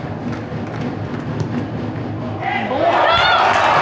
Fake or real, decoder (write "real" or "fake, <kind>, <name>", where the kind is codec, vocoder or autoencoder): real